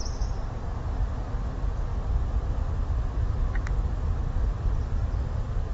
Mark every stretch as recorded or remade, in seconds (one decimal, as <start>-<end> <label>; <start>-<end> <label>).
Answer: 0.0-0.8 remade; 0.8-5.7 recorded